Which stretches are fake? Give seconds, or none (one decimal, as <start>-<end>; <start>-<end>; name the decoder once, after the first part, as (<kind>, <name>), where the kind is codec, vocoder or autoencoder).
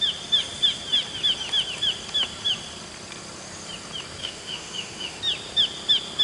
4.2-5.2 (autoencoder, DAC-VAE)